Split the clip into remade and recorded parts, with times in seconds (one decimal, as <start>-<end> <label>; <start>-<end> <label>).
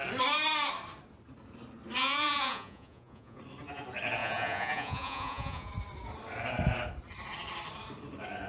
0.0-2.0 recorded; 2.0-3.4 remade; 3.4-4.2 recorded; 4.2-5.7 remade; 5.7-8.5 recorded